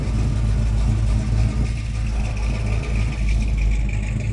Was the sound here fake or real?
real